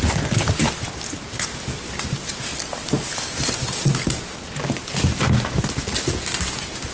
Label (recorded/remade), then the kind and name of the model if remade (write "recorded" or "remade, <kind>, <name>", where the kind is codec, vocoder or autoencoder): recorded